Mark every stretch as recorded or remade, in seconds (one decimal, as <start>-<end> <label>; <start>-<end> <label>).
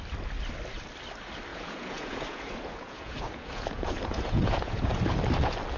0.0-1.5 recorded; 1.5-5.0 remade; 5.0-5.8 recorded